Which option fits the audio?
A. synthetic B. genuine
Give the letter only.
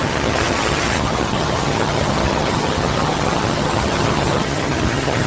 A